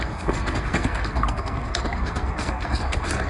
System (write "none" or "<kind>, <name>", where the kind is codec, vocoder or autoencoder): codec, SNAC